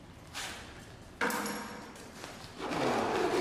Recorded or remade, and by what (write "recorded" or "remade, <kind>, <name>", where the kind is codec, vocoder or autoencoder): recorded